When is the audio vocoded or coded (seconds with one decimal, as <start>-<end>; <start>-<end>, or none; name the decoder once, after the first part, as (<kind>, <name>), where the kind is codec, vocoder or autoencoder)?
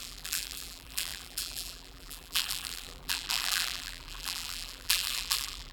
0.0-5.7 (vocoder, BigVGAN v2)